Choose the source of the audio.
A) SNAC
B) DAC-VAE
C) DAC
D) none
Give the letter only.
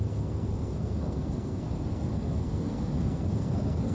A